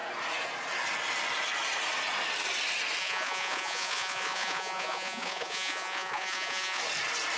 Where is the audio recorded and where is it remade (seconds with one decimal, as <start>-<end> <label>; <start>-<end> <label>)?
0.0-3.0 recorded; 3.0-6.8 remade; 6.8-7.4 recorded